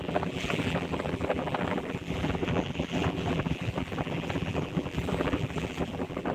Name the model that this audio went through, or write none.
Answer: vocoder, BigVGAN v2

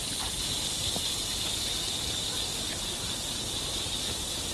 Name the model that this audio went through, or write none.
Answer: none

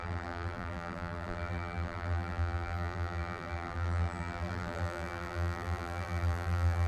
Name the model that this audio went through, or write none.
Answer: vocoder, BigVGAN v2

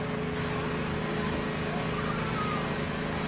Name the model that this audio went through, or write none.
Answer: none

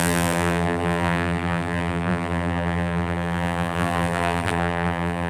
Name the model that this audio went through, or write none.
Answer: vocoder, BigVGAN v2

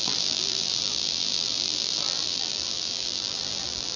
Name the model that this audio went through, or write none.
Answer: vocoder, BigVGAN v2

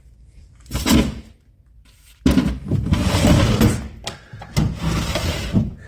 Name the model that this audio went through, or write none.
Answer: none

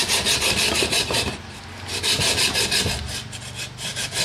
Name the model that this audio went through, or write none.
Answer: none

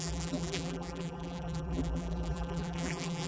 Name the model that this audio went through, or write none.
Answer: vocoder, BigVGAN v2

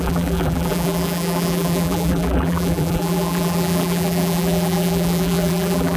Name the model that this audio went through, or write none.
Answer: vocoder, BigVGAN v2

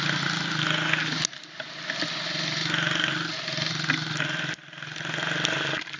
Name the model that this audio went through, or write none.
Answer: none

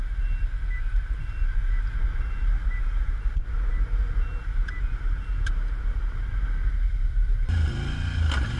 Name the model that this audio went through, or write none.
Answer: none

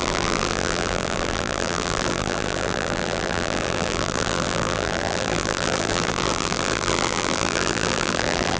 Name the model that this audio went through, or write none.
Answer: vocoder, BigVGAN v2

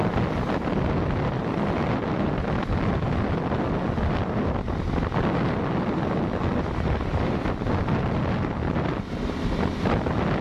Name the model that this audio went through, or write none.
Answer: none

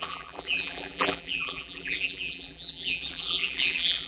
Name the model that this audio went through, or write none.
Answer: vocoder, BigVGAN v2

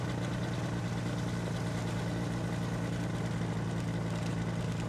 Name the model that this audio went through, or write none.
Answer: none